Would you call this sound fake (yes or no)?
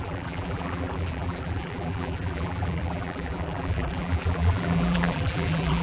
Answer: yes